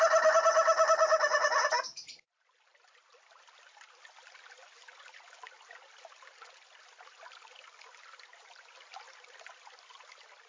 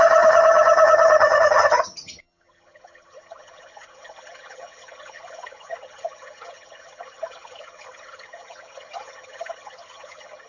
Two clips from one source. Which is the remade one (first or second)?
second